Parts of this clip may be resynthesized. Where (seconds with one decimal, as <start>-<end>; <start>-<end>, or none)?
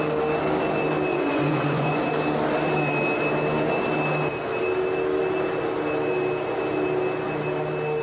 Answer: 1.1-2.0